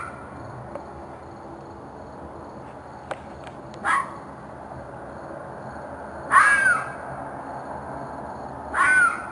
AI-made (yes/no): no